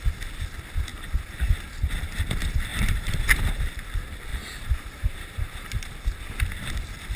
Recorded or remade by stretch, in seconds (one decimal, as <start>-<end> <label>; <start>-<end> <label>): 0.0-2.7 recorded; 2.7-3.5 remade; 3.5-4.3 recorded; 4.3-5.9 remade; 5.9-7.2 recorded